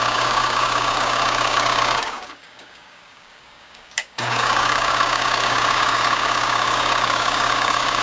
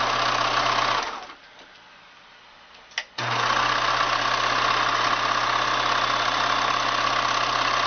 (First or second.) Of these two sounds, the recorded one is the second